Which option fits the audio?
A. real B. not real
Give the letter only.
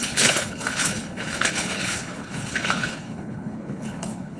B